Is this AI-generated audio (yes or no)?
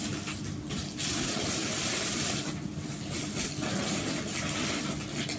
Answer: no